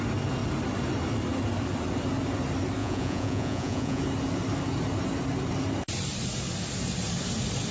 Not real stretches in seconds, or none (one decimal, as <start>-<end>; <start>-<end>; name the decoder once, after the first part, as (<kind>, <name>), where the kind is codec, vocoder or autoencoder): 2.8-4.0 (vocoder, Vocos)